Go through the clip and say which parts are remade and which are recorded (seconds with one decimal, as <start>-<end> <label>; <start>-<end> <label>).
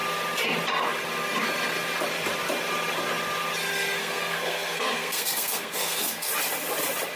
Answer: 0.0-4.0 recorded; 4.0-6.3 remade; 6.3-7.2 recorded